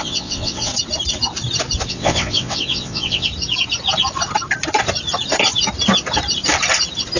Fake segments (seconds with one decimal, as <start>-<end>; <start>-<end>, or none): 0.0-0.7; 1.9-3.3